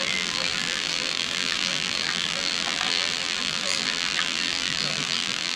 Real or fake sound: fake